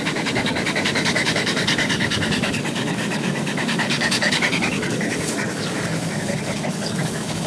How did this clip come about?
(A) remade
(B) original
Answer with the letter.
A